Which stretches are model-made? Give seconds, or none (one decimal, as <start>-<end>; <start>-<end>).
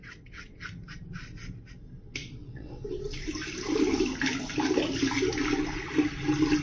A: 0.0-0.6; 2.2-3.0